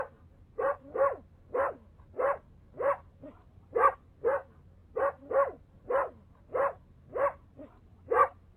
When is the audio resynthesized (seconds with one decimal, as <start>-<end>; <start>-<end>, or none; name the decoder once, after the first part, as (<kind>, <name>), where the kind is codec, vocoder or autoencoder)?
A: none